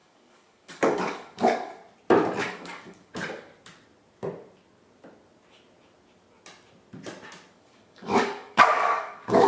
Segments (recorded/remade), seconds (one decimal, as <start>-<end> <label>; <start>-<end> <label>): 0.0-1.8 remade; 1.8-2.4 recorded; 2.4-3.1 remade; 3.1-7.5 recorded; 7.5-9.5 remade

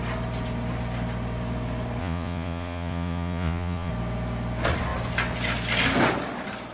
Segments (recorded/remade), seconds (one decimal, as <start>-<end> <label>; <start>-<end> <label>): 0.0-2.0 recorded; 2.0-3.9 remade; 3.9-6.7 recorded

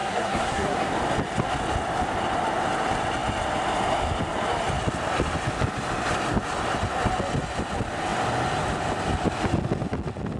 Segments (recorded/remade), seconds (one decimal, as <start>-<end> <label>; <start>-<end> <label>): 0.0-0.9 remade; 0.9-10.4 recorded

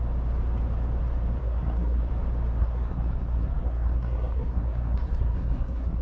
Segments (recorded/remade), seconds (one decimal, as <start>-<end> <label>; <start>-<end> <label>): 0.0-1.4 recorded; 1.4-2.1 remade; 2.1-2.6 recorded; 2.6-6.0 remade

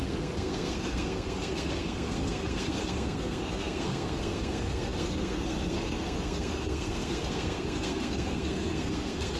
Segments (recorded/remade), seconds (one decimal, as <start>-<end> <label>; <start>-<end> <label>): 0.0-9.4 remade

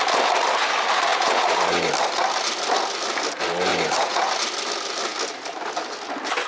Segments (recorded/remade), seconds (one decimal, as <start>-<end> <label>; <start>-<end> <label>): 0.0-1.1 recorded; 1.1-1.9 remade; 1.9-3.7 recorded; 3.7-4.3 remade; 4.3-6.5 recorded